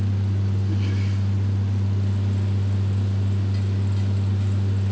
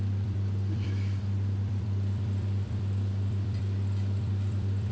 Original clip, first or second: first